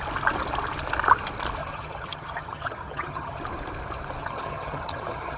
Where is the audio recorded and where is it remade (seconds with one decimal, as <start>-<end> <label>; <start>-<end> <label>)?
0.0-1.6 recorded; 1.6-3.4 remade; 3.4-4.2 recorded; 4.2-5.4 remade